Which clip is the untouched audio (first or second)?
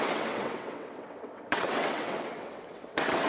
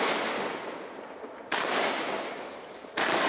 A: second